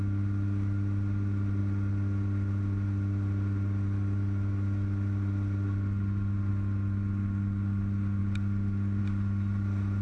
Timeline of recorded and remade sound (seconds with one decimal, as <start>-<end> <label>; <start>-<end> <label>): 0.0-10.0 recorded